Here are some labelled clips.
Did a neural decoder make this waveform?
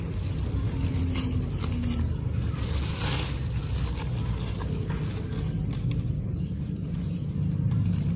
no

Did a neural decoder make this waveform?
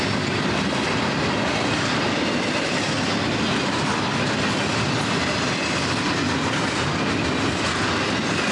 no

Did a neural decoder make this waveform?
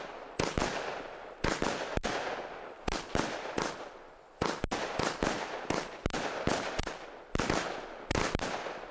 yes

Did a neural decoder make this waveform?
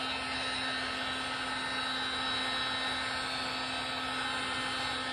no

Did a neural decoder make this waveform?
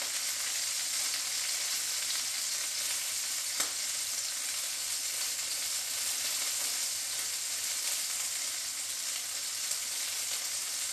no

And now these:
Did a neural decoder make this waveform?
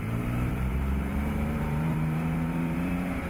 yes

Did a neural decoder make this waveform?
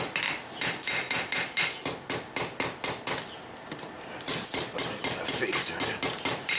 no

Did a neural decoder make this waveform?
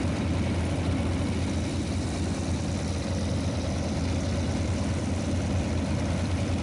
no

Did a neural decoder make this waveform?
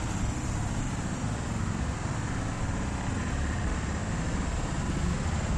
no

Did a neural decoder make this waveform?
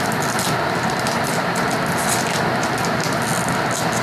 no